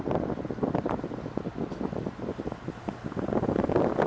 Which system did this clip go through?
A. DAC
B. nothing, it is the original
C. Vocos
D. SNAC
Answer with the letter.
B